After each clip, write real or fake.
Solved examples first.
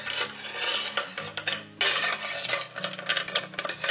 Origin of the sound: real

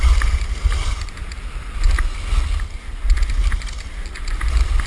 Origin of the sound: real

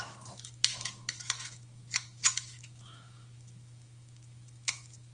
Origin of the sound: fake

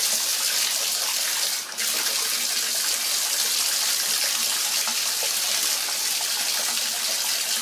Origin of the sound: real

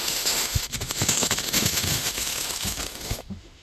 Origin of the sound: fake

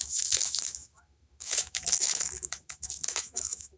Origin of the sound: fake